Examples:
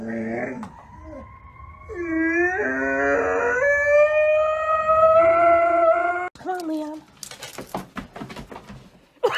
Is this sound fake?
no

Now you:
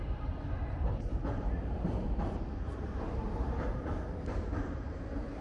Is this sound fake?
yes